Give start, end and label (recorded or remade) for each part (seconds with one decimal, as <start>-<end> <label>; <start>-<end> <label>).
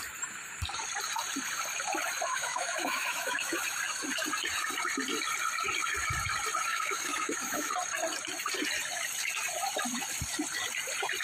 0.0-2.3 recorded; 2.3-3.6 remade; 3.6-6.7 recorded; 6.7-7.7 remade; 7.7-11.2 recorded